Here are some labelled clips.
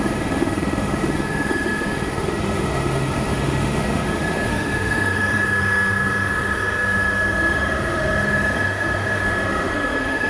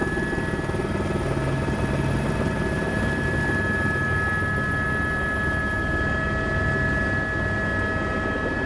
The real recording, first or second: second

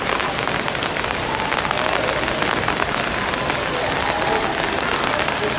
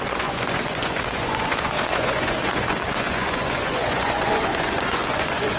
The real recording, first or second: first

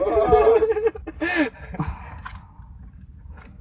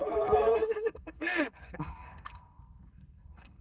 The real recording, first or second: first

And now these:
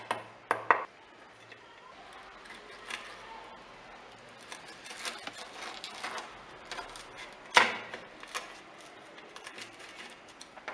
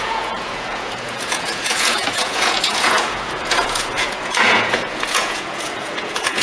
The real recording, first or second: first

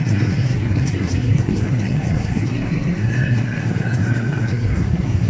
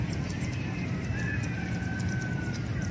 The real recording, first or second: second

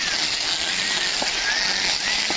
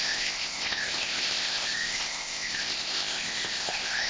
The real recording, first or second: first